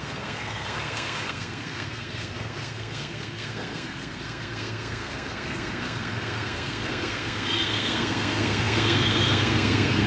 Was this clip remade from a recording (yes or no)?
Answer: yes